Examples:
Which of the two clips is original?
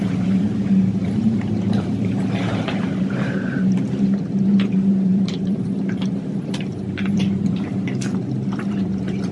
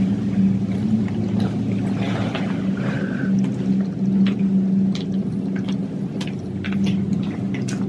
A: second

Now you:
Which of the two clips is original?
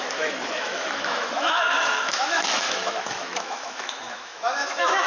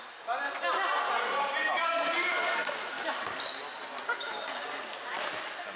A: second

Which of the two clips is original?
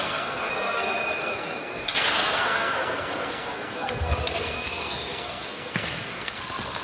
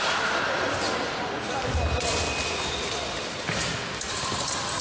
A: second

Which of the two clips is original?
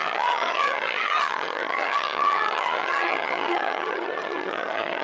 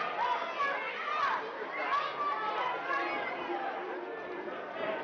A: second